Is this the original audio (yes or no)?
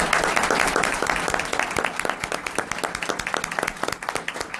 yes